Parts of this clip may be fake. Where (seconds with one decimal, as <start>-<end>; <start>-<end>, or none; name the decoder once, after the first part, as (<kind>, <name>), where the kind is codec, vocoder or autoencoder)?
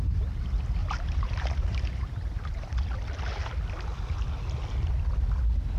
0.8-2.7 (vocoder, BigVGAN v2); 3.9-4.4